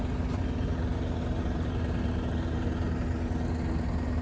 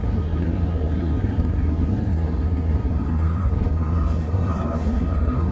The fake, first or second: second